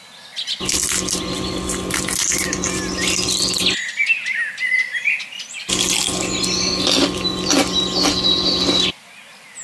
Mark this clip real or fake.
real